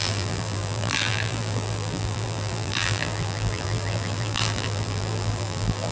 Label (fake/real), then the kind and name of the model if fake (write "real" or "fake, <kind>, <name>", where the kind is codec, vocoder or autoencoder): fake, vocoder, BigVGAN v2